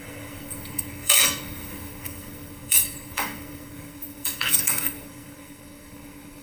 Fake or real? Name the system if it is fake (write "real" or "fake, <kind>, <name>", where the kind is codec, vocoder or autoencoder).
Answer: fake, codec, SNAC